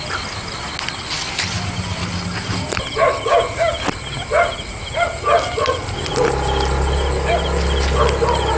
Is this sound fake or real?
real